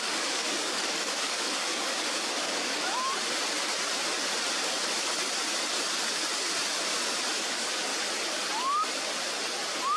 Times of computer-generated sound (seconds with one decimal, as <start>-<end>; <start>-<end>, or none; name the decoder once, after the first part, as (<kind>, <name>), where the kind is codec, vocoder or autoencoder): 0.0-2.8 (codec, DAC); 7.3-7.9

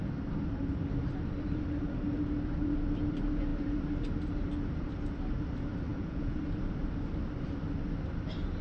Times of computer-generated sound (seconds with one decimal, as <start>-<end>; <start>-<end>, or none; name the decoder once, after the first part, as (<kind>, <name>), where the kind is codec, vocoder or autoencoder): 5.9-6.4 (vocoder, Vocos)

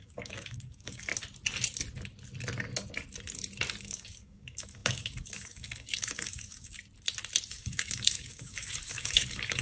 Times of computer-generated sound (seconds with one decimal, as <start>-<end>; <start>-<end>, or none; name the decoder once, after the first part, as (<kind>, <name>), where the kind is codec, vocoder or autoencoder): 0.0-1.1 (codec, DAC); 3.8-6.8; 7.5-9.6